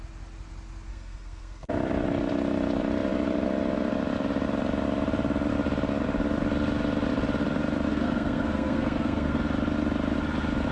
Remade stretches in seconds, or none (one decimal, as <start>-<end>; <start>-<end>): 0.9-1.7; 7.9-9.4